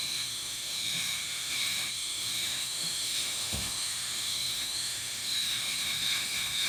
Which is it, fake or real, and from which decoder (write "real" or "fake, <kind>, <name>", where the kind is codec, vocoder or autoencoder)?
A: fake, autoencoder, DAC-VAE